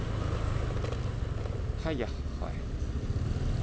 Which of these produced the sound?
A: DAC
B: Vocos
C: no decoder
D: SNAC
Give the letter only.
C